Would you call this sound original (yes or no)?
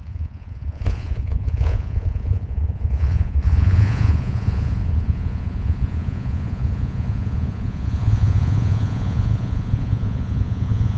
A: no